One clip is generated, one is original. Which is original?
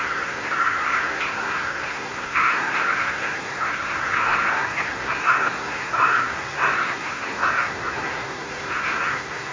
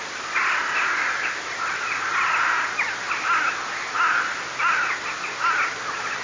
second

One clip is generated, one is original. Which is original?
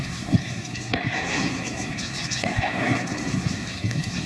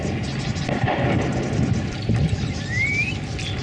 second